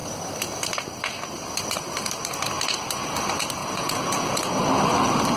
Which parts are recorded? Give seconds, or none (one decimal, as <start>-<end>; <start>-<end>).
0.0-3.6; 4.6-5.4